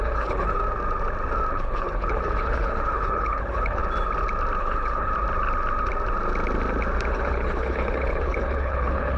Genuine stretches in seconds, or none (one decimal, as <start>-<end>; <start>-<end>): 0.6-1.5; 3.8-4.6; 5.1-7.1